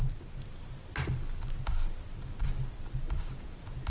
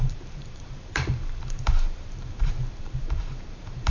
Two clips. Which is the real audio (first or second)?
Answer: first